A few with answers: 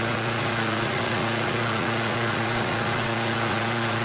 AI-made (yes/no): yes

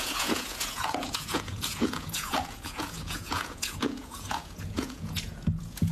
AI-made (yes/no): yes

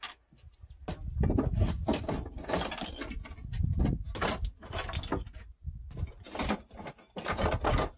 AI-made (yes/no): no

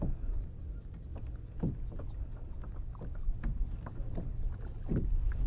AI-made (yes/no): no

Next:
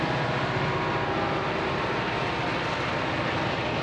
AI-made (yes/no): no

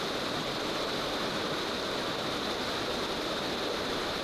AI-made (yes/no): no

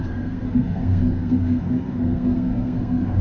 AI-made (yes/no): yes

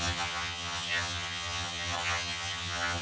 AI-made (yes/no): yes